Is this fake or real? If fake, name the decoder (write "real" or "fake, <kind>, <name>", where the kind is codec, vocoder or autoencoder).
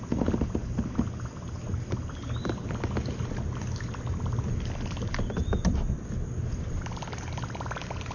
real